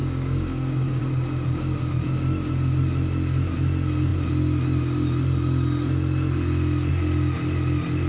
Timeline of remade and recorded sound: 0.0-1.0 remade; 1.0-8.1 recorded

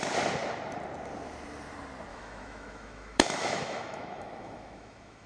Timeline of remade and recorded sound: 0.0-2.1 recorded; 2.1-5.3 remade

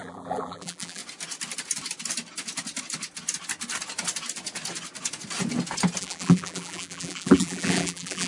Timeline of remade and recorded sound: 0.0-1.0 remade; 1.0-6.0 recorded; 6.0-8.3 remade